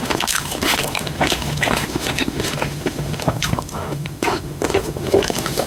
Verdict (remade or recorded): remade